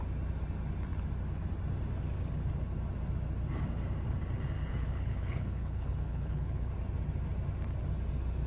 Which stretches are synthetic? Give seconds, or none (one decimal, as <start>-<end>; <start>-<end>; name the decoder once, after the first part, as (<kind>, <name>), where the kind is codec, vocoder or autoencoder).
4.7-6.7 (codec, HILCodec)